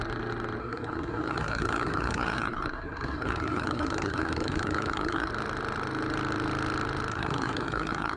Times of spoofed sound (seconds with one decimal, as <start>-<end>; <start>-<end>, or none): 0.6-5.3; 7.1-8.2